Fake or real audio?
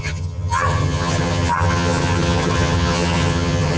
fake